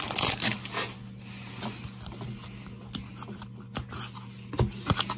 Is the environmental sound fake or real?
real